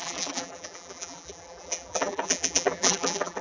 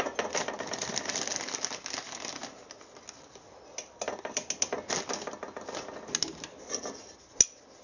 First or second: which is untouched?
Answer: second